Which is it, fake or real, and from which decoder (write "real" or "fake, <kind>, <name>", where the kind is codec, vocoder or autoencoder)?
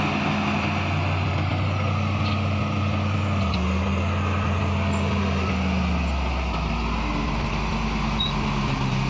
real